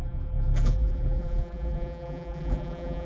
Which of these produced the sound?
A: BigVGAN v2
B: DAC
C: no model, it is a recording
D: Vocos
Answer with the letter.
A